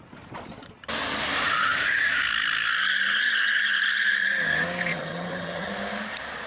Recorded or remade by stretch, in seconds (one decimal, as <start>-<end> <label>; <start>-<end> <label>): 0.0-4.9 recorded; 4.9-5.7 remade; 5.7-6.5 recorded